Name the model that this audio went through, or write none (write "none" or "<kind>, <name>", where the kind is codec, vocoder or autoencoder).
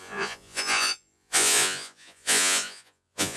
vocoder, Vocos